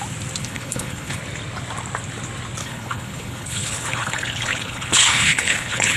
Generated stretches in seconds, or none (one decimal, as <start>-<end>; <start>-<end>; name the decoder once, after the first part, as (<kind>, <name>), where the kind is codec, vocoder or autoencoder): 0.4-1.2 (codec, HILCodec); 2.6-6.0